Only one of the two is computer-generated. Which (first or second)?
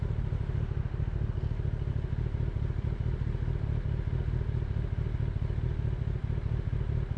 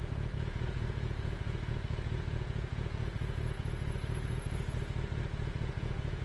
second